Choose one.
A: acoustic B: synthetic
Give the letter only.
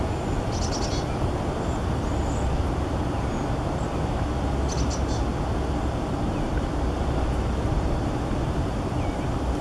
A